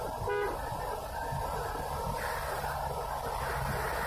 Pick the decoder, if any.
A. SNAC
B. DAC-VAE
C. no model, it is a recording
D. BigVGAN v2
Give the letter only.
C